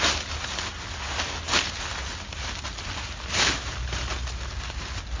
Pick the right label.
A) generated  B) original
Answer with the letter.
B